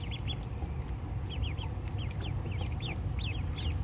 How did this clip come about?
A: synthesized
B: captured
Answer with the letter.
B